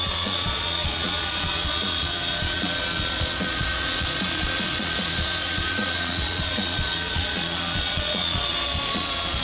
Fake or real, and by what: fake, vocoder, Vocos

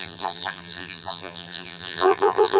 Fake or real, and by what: fake, vocoder, BigVGAN v2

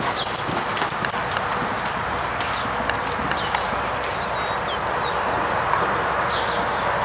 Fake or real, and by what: real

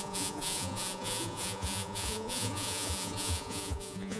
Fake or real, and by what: fake, vocoder, Vocos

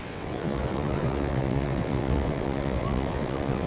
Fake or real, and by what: fake, vocoder, WaveNeXt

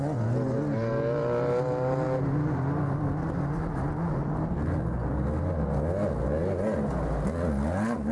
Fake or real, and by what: real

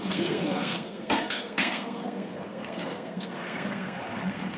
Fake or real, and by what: fake, codec, SNAC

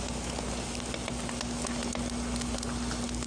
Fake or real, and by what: real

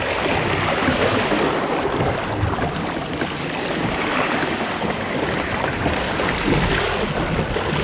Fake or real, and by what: real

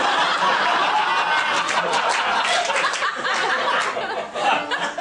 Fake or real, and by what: real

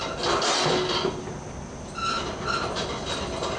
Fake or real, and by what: real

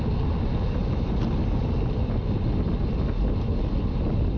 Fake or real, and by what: real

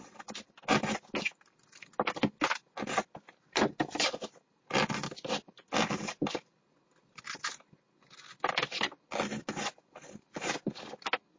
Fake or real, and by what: real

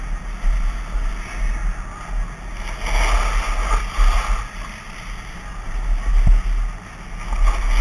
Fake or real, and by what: real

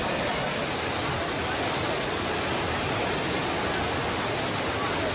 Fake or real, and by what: real